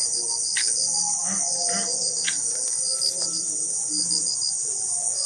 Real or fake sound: real